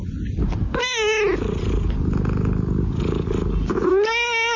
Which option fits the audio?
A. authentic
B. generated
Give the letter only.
A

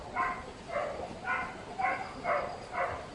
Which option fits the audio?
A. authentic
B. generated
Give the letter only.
A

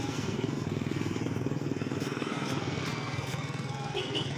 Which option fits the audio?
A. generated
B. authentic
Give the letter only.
A